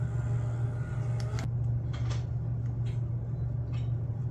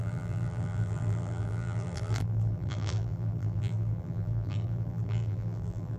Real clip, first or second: first